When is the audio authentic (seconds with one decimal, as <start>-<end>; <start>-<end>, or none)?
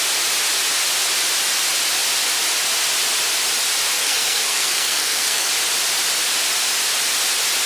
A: 0.0-4.0; 5.5-7.7